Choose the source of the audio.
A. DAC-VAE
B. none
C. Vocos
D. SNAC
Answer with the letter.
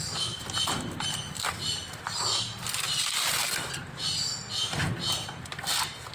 B